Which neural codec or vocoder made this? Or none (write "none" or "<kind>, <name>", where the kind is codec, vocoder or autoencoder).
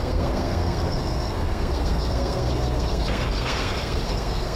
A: codec, SNAC